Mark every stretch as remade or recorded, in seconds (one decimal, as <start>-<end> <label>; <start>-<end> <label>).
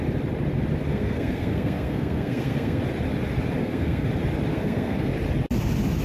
0.0-0.9 recorded; 0.9-2.8 remade; 2.8-3.6 recorded; 3.6-4.1 remade; 4.1-4.5 recorded; 4.5-5.1 remade; 5.1-6.0 recorded